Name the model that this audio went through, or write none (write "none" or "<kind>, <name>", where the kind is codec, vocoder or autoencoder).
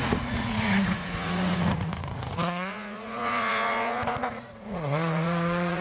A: vocoder, Vocos